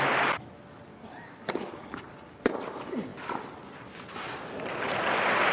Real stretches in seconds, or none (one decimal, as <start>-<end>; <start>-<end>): 0.0-0.9; 2.0-5.5